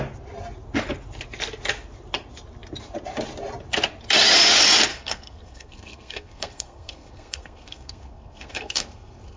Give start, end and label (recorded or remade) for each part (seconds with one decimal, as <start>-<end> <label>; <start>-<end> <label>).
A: 0.0-4.9 recorded; 4.9-9.4 remade

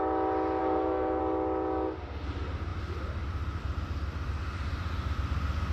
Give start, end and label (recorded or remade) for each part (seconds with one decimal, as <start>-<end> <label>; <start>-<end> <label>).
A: 0.0-0.6 recorded; 0.6-1.2 remade; 1.2-5.7 recorded

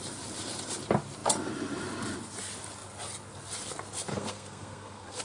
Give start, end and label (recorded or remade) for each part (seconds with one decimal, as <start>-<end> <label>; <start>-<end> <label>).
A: 0.0-4.1 recorded; 4.1-5.2 remade

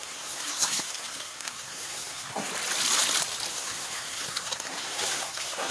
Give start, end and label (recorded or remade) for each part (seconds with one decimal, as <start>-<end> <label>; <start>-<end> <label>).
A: 0.0-2.5 remade; 2.5-3.5 recorded; 3.5-5.7 remade

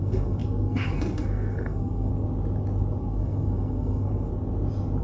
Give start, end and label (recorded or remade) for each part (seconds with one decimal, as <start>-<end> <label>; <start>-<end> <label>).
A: 0.0-2.1 remade; 2.1-3.0 recorded; 3.0-4.3 remade; 4.3-5.0 recorded